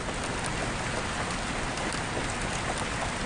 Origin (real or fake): real